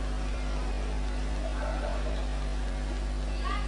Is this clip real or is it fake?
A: real